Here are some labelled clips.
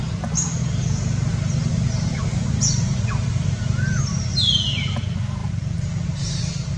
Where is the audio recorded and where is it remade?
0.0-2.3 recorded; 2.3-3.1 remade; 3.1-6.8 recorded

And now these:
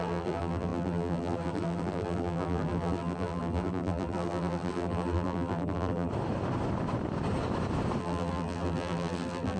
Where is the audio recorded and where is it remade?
0.0-6.1 remade; 6.1-8.0 recorded; 8.0-9.6 remade

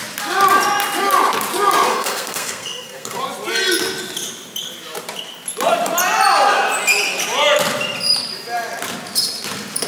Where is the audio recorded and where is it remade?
0.0-1.9 recorded; 1.9-3.2 remade; 3.2-9.9 recorded

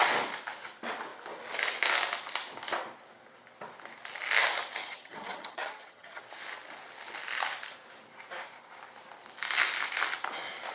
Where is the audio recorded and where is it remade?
0.0-4.8 recorded; 4.8-6.2 remade; 6.2-10.7 recorded

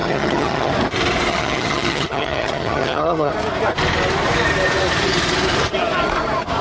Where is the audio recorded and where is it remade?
0.0-0.7 remade; 0.7-1.3 recorded; 1.3-3.3 remade; 3.3-6.6 recorded